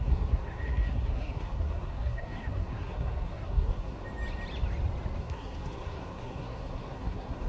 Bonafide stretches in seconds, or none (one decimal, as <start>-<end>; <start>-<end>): 4.0-5.2